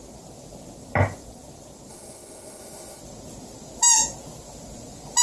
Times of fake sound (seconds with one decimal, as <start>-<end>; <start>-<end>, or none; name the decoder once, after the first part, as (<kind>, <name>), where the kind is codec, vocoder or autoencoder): 1.9-3.0 (autoencoder, DAC-VAE)

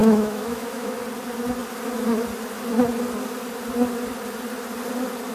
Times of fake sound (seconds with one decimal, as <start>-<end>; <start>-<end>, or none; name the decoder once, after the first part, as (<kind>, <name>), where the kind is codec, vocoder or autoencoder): 0.0-1.0 (autoencoder, DAC-VAE)

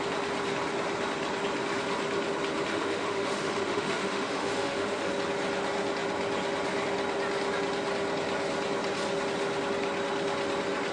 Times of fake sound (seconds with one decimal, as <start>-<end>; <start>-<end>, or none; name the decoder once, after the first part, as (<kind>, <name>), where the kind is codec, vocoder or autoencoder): 2.7-5.1 (autoencoder, DAC-VAE)

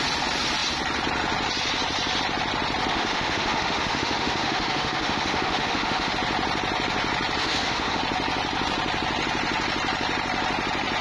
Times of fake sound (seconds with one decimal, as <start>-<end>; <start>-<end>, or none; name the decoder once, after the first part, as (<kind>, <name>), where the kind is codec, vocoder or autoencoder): 2.9-6.1 (autoencoder, DAC-VAE); 7.4-8.0

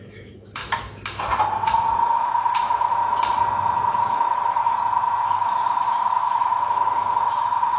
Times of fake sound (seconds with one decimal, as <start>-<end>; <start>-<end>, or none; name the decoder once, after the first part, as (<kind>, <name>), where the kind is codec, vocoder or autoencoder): 0.0-0.6 (autoencoder, DAC-VAE); 2.1-3.0; 4.0-4.7; 5.2-7.8

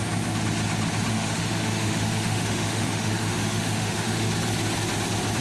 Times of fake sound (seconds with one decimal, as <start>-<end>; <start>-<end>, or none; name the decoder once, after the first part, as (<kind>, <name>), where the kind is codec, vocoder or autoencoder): 1.1-4.3 (autoencoder, DAC-VAE)

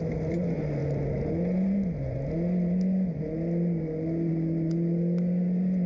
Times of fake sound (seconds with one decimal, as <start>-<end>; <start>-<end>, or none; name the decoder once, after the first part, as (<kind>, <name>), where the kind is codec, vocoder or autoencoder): none